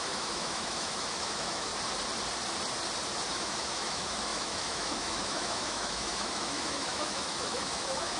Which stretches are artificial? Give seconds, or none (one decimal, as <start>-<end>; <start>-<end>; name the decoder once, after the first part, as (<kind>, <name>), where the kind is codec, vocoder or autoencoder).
0.0-1.7 (autoencoder, DAC-VAE); 3.3-8.2